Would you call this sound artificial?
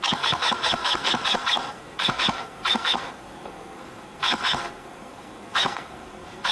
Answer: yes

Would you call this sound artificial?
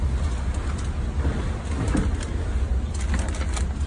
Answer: no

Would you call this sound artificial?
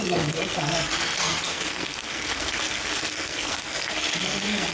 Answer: yes